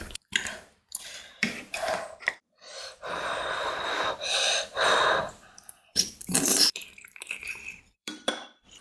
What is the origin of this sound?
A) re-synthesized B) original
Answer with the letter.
A